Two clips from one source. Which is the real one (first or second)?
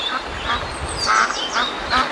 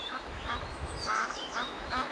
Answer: first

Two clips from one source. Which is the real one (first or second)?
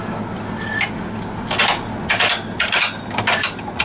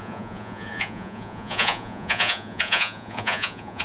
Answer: first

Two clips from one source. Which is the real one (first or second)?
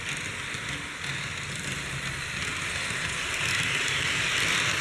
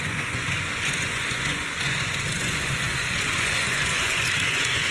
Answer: first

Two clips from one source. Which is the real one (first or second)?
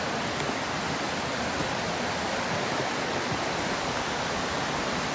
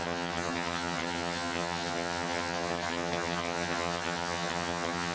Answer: first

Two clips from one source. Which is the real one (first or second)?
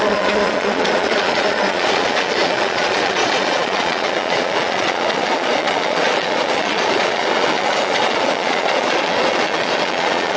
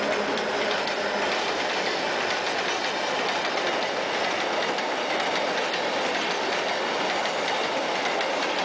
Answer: second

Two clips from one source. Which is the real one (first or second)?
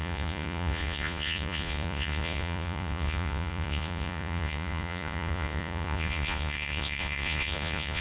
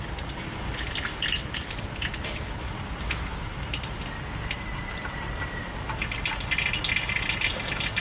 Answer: second